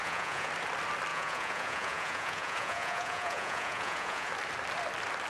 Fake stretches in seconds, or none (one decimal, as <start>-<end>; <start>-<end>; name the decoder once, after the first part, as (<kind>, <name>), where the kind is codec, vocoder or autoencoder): 0.0-0.5 (vocoder, Vocos); 1.1-4.3